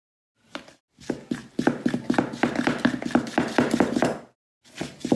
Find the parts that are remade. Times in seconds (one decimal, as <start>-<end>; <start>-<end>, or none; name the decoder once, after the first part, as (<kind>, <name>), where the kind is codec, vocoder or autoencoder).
1.4-4.5 (vocoder, BigVGAN v2)